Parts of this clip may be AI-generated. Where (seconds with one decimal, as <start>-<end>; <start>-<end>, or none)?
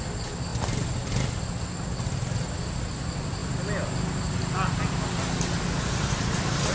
none